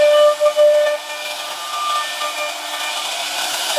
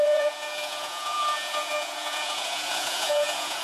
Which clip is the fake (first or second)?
second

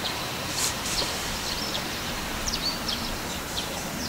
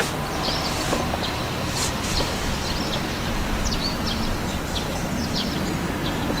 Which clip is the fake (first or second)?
first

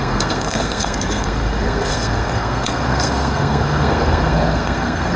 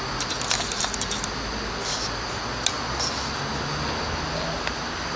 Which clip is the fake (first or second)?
first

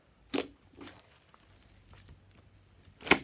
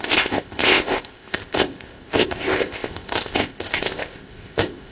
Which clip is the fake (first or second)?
second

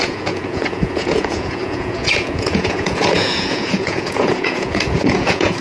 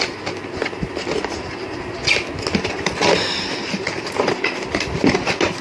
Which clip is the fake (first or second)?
first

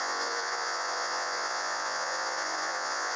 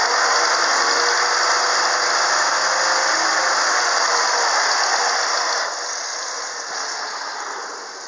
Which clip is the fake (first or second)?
first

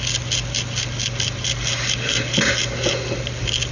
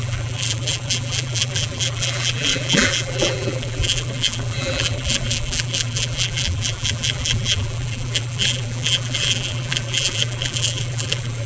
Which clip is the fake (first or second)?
second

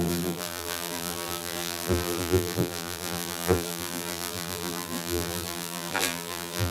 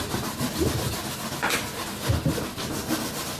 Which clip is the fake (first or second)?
first